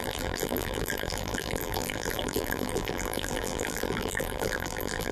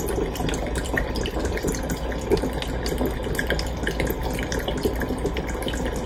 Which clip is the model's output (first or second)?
first